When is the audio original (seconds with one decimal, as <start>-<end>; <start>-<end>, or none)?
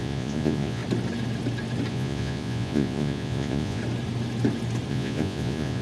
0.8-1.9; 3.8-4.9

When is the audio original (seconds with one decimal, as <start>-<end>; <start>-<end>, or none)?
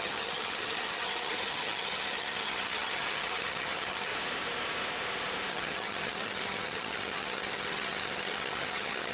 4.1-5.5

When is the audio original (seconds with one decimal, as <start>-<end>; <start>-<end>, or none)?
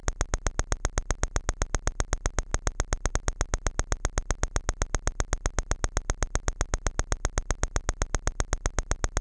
0.0-9.2